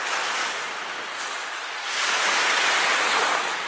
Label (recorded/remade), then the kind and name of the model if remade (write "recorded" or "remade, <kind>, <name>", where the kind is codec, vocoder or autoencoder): recorded